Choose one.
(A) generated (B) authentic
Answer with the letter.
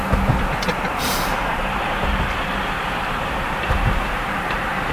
A